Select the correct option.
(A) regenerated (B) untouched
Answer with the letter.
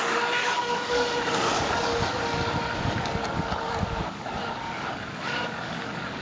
A